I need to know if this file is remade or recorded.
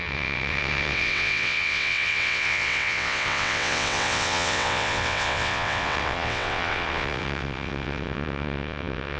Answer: remade